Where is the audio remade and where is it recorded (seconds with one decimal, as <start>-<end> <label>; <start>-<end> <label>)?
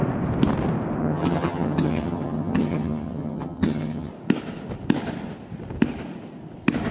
0.0-1.0 recorded; 1.0-4.1 remade; 4.1-6.9 recorded